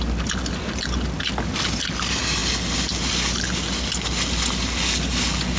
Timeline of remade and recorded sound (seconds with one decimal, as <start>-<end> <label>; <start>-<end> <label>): 0.0-5.6 recorded